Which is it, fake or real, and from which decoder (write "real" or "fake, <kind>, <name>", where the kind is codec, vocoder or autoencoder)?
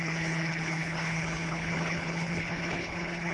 fake, codec, HILCodec